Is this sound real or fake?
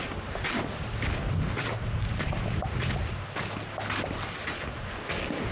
real